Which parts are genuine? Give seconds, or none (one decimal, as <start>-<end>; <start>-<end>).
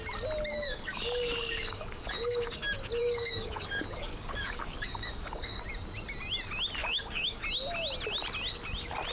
0.0-0.5; 2.6-3.0; 5.6-6.8; 7.4-9.1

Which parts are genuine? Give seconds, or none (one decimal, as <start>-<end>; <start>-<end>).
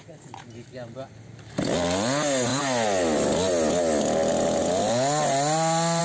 0.0-6.0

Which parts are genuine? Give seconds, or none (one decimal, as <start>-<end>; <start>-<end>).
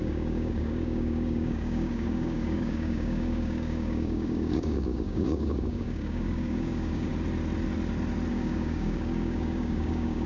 7.1-8.3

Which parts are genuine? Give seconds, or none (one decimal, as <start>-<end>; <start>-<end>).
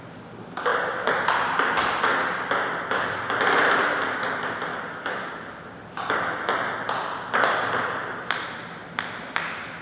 0.0-4.7; 5.3-9.8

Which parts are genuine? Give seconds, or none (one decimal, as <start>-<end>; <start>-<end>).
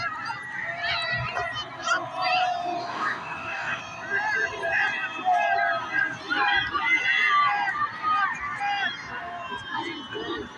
0.0-2.8; 3.8-10.6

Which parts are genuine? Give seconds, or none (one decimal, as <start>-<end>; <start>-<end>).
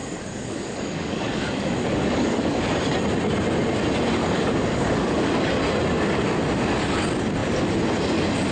2.6-4.2; 5.3-8.5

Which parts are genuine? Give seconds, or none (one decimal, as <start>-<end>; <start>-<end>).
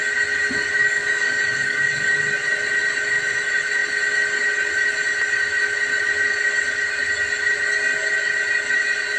0.0-0.8; 2.2-9.2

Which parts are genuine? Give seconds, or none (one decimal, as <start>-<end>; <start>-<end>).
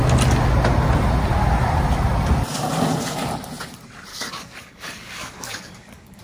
0.0-4.1